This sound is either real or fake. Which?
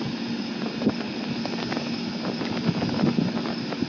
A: real